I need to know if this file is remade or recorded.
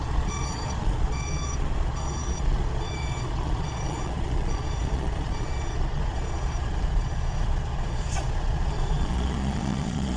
remade